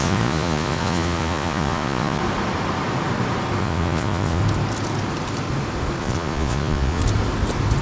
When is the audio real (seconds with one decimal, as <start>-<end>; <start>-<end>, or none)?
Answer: 2.2-3.6; 4.4-6.0; 7.0-7.8